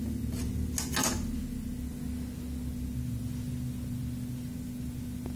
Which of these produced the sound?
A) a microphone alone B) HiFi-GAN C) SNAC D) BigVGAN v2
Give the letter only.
A